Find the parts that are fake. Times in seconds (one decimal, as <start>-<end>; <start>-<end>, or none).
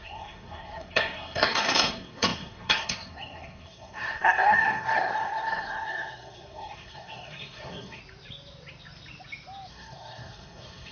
0.0-8.0; 9.7-10.9